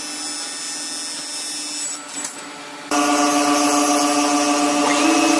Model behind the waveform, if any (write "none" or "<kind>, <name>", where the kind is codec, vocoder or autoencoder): none